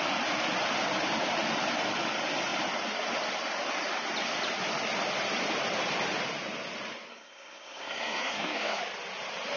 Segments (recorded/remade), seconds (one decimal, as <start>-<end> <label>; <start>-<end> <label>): 0.0-7.1 recorded; 7.1-8.8 remade; 8.8-9.6 recorded